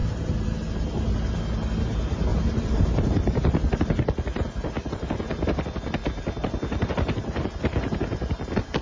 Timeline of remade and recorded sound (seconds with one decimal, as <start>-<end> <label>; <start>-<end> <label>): 0.0-0.7 remade; 0.7-2.3 recorded; 2.3-3.7 remade; 3.7-8.8 recorded